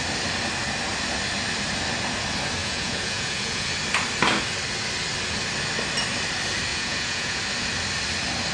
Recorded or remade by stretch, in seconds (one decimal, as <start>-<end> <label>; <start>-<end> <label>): 0.0-2.6 recorded; 2.6-3.7 remade; 3.7-6.7 recorded; 6.7-7.4 remade; 7.4-8.5 recorded